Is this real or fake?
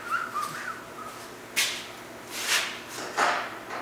real